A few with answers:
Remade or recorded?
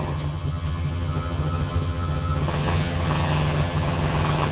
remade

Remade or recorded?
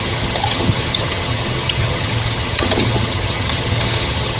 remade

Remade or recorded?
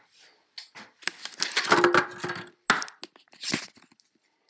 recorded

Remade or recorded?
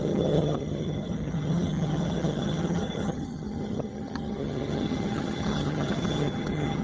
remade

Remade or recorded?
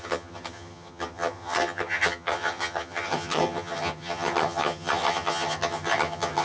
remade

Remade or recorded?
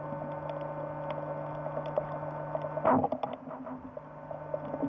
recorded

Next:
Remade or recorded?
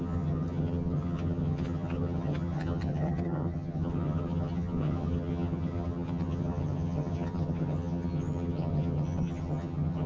remade